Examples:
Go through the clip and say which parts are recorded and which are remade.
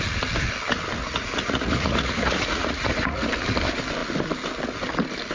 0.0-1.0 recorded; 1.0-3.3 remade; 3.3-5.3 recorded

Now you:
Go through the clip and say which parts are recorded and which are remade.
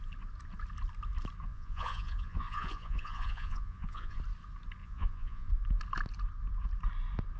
0.0-1.5 recorded; 1.5-4.2 remade; 4.2-4.8 recorded; 4.8-5.5 remade; 5.5-7.4 recorded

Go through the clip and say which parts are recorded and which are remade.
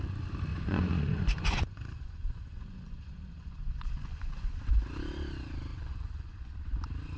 0.0-0.5 recorded; 0.5-4.6 remade; 4.6-5.7 recorded; 5.7-6.5 remade; 6.5-7.2 recorded